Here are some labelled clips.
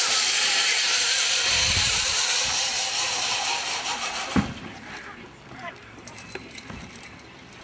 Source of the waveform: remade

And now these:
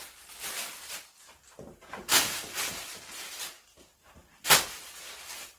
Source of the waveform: recorded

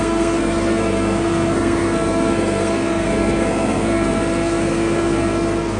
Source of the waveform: remade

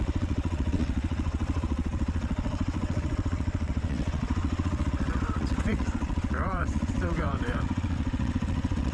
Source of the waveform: remade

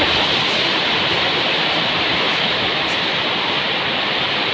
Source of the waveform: remade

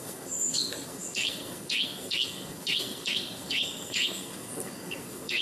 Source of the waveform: remade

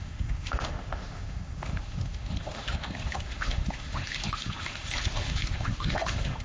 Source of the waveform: remade